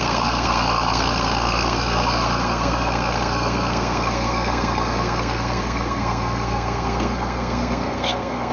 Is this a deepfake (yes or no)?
yes